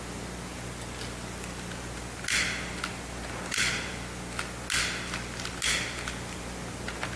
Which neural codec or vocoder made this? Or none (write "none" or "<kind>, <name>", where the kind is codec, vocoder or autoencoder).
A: none